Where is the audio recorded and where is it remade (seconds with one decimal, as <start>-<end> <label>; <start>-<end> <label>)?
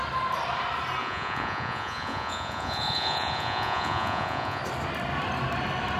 0.0-1.0 recorded; 1.0-4.6 remade; 4.6-6.0 recorded